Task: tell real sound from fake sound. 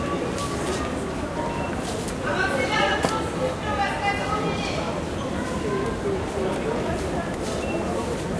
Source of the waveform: real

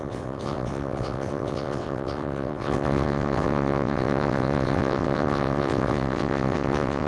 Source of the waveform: fake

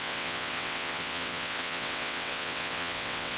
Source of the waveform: fake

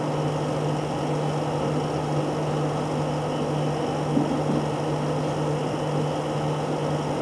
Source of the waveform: real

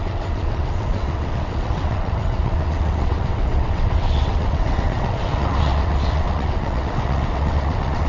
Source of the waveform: fake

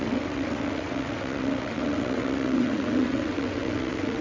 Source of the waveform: fake